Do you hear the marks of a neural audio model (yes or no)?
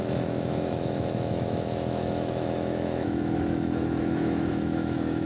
yes